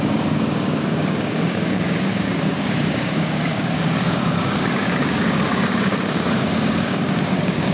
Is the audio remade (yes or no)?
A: yes